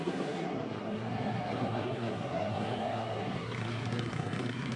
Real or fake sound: fake